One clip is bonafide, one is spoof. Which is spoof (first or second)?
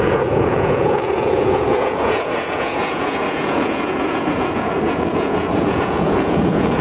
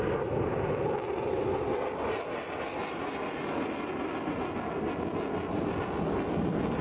first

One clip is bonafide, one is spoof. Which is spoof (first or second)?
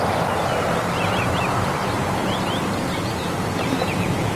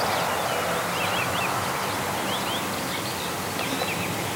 first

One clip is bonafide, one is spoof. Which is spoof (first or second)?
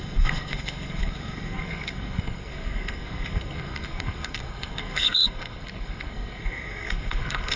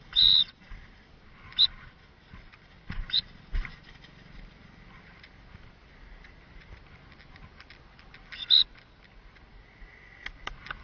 first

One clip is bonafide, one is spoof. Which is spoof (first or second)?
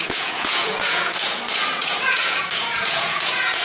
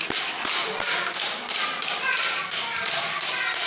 first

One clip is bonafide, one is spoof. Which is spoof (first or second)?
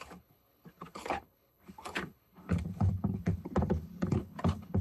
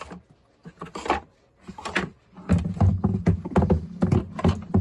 first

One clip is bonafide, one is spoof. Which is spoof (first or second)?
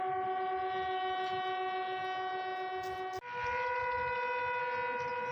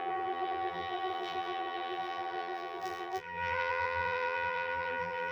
second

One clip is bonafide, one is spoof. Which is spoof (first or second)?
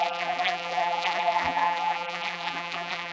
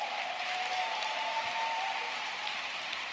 first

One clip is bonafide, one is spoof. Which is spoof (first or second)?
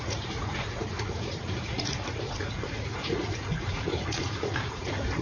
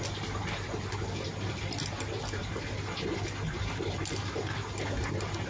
first